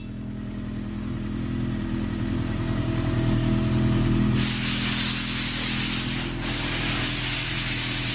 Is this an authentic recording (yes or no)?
yes